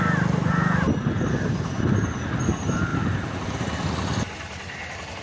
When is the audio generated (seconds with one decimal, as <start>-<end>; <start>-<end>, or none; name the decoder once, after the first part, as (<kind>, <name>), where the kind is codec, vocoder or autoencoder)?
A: none

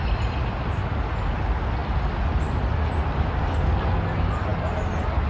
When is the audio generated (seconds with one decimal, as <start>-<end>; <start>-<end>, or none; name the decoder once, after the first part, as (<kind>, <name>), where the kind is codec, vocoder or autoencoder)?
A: none

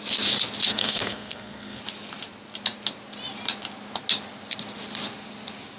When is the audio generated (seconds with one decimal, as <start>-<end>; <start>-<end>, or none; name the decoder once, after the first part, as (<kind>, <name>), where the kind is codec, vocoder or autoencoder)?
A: 0.7-1.8 (codec, SNAC)

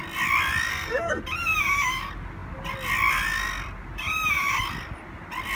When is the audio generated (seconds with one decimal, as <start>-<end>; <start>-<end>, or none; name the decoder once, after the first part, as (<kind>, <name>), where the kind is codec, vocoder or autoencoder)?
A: 0.7-1.2 (codec, SNAC)

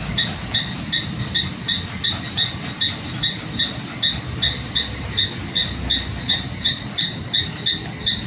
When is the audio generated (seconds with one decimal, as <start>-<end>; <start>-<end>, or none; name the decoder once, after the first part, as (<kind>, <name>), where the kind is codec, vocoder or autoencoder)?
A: 6.1-6.7 (vocoder, BigVGAN v2)